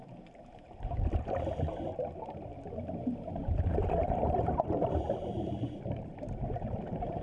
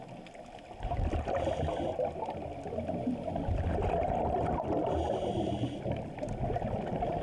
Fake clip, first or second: first